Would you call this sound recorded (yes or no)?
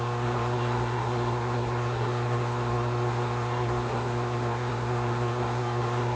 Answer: no